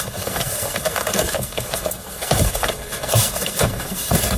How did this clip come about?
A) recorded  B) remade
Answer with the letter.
B